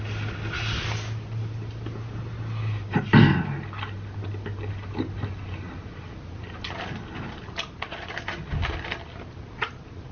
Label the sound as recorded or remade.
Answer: recorded